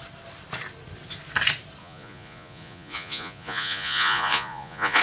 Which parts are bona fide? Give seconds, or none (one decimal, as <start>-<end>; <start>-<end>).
0.0-1.8